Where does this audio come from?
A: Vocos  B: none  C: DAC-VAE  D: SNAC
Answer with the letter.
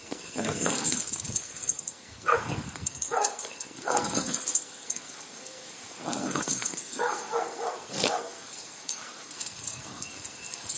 D